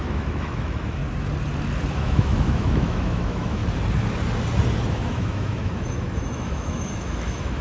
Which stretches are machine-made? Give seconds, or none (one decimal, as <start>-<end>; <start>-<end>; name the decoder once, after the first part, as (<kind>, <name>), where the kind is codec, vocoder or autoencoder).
0.0-1.0 (autoencoder, DAC-VAE); 1.9-3.6; 4.9-7.6